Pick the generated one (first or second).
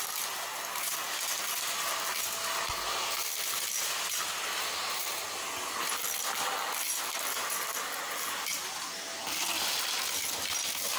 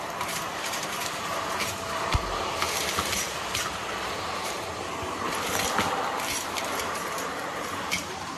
second